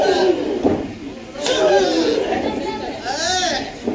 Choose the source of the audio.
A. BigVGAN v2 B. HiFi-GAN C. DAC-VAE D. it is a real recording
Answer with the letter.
D